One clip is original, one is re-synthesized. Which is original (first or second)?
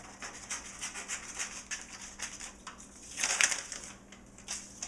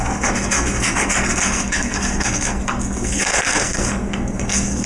first